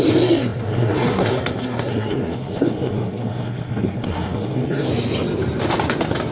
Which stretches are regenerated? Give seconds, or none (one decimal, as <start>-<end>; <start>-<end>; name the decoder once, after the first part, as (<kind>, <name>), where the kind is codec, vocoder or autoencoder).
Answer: 0.0-4.9 (codec, SNAC)